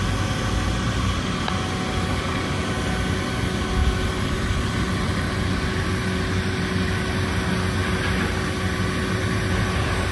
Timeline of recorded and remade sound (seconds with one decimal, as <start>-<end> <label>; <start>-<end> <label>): 0.0-3.8 recorded; 3.8-5.4 remade; 5.4-10.1 recorded